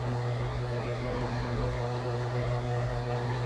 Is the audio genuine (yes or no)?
no